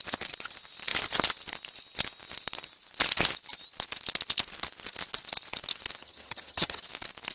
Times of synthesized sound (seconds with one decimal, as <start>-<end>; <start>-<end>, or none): 6.0-6.8